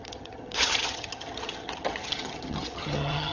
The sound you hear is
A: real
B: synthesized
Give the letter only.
B